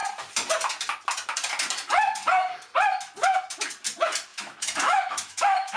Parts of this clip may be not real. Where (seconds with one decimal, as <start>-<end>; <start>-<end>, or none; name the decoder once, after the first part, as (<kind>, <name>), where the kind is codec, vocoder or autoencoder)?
4.3-5.8 (autoencoder, DAC-VAE)